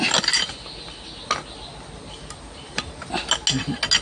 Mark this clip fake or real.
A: real